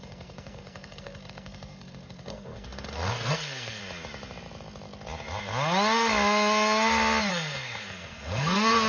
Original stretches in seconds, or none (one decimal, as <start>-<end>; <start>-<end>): 3.8-7.3